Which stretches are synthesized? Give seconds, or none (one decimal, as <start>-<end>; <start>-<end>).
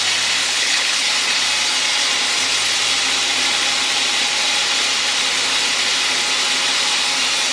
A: 0.4-1.1